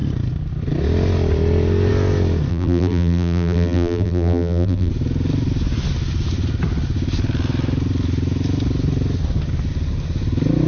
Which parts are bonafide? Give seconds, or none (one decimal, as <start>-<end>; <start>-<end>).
0.0-2.5; 4.9-10.7